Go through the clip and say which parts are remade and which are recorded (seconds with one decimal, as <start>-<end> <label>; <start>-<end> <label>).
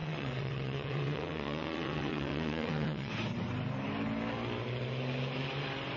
0.0-3.1 remade; 3.1-6.0 recorded